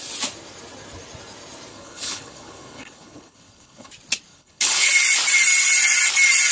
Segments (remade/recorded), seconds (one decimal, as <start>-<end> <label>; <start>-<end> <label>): 0.0-1.7 recorded; 1.7-3.9 remade; 3.9-4.3 recorded; 4.3-4.9 remade; 4.9-6.5 recorded

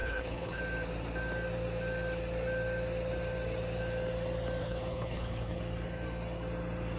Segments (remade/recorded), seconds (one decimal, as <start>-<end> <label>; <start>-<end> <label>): 0.0-0.6 remade; 0.6-4.6 recorded; 4.6-5.6 remade; 5.6-7.0 recorded

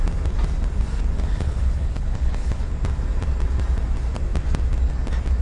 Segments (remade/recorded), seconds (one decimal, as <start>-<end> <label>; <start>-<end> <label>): 0.0-1.2 recorded; 1.2-2.7 remade; 2.7-5.4 recorded

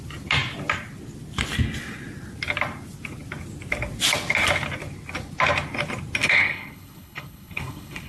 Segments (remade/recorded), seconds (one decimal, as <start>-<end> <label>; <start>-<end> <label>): 0.0-6.2 recorded; 6.2-8.1 remade